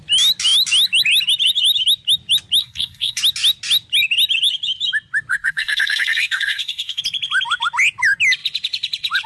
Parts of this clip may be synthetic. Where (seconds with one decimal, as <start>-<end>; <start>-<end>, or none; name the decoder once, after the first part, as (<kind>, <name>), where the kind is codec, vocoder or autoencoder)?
2.6-3.2 (codec, SNAC); 5.3-7.0